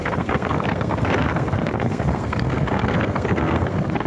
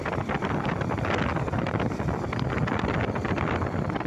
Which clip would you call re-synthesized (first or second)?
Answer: first